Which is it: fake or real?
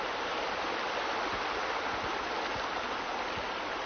real